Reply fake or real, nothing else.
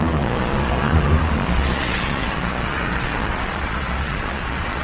fake